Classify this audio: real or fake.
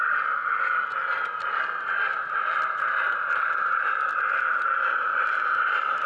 real